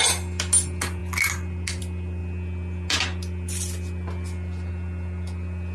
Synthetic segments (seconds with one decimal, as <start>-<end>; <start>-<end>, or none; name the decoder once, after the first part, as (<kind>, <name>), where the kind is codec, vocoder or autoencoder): none